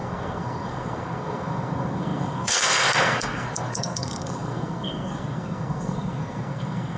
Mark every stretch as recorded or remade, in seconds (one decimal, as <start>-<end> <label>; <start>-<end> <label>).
0.0-7.0 remade